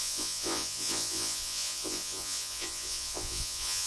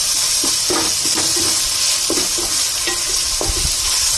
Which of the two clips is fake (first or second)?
first